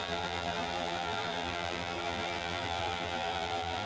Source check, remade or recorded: remade